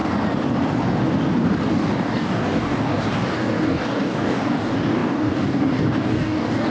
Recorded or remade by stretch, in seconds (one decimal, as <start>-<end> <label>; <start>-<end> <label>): 0.0-1.7 recorded; 1.7-6.7 remade